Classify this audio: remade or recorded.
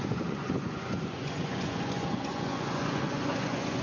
remade